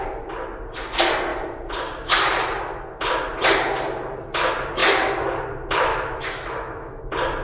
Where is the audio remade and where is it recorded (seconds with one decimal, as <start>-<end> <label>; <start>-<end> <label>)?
0.0-5.9 recorded; 5.9-7.0 remade; 7.0-7.4 recorded